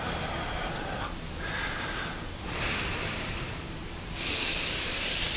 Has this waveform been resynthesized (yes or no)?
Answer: yes